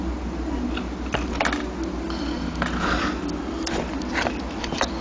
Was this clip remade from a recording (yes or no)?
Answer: no